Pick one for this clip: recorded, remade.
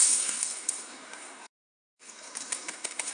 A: remade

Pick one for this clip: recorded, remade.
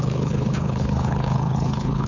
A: remade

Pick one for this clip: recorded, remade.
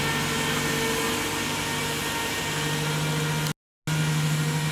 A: recorded